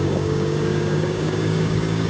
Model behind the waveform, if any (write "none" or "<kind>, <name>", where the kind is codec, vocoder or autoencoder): codec, DAC